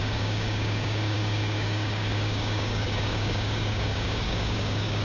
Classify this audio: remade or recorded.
remade